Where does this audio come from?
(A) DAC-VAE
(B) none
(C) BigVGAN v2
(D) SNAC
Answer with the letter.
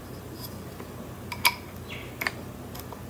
B